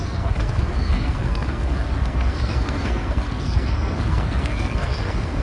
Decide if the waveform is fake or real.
fake